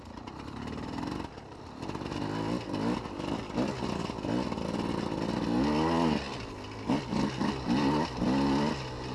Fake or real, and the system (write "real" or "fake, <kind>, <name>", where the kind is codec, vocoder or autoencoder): real